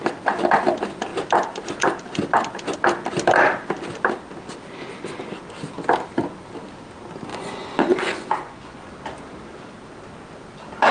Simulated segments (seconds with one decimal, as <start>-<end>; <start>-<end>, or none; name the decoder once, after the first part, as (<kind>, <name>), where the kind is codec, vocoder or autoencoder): 7.3-8.9 (vocoder, Vocos)

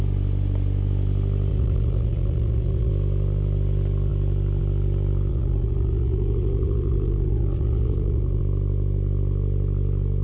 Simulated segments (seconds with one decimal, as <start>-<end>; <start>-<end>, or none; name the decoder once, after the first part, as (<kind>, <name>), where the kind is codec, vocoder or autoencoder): 1.5-2.9 (vocoder, Vocos); 5.3-8.4